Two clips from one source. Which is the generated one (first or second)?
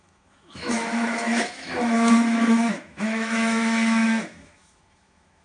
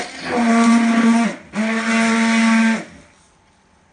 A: first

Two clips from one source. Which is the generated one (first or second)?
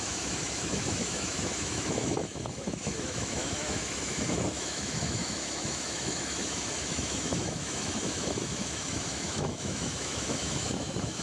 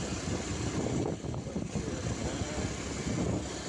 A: first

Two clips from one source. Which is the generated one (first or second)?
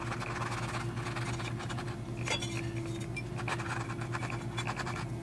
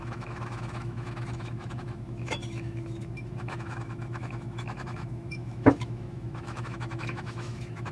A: second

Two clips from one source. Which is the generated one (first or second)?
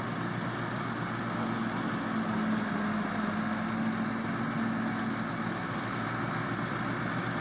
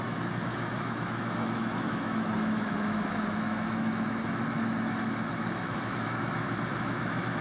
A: second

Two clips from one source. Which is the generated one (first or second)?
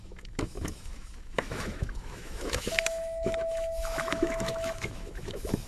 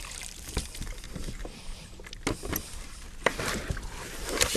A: first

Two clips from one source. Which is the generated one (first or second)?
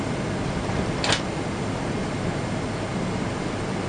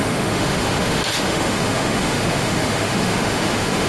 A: second